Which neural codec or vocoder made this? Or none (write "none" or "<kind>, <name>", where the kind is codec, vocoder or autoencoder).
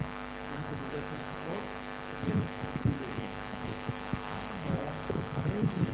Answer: codec, HILCodec